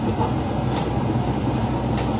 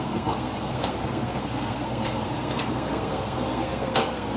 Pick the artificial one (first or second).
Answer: second